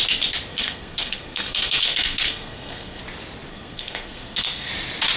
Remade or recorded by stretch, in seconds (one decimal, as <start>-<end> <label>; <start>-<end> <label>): 0.0-0.5 recorded; 0.5-3.0 remade; 3.0-3.5 recorded; 3.5-4.7 remade; 4.7-5.2 recorded